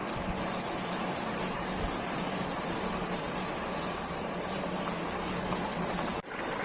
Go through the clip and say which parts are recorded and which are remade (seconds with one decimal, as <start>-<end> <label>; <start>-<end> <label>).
0.0-4.0 recorded; 4.0-6.6 remade